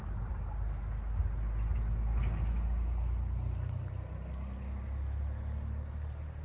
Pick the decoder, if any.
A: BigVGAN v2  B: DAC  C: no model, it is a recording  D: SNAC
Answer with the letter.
C